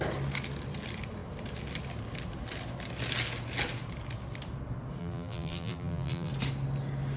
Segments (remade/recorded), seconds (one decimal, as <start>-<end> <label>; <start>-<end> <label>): 0.0-5.0 recorded; 5.0-6.3 remade; 6.3-7.2 recorded